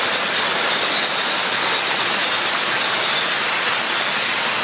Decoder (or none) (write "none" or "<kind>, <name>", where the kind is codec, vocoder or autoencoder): none